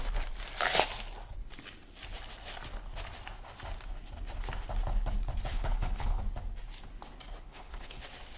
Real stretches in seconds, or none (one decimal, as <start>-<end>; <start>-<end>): 0.0-5.5; 6.2-7.4; 8.0-8.4